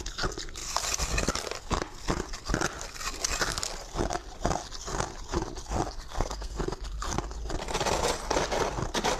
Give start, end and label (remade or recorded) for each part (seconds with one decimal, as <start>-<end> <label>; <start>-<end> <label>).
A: 0.0-6.1 recorded; 6.1-6.6 remade; 6.6-9.2 recorded